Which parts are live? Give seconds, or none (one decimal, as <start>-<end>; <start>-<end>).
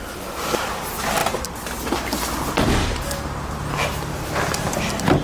0.0-5.2